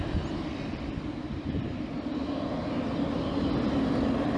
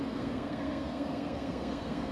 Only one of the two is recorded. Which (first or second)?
first